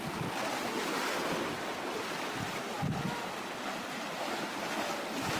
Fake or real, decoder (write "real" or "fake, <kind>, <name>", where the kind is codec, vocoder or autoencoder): real